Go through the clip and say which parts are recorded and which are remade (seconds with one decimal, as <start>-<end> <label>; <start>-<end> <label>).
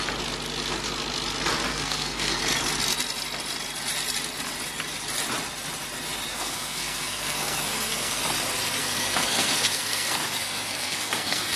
0.0-1.7 recorded; 1.7-2.4 remade; 2.4-6.3 recorded; 6.3-8.2 remade; 8.2-8.8 recorded; 8.8-11.6 remade